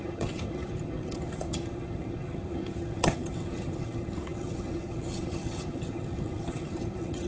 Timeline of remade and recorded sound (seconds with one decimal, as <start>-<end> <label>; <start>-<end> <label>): 0.0-7.3 remade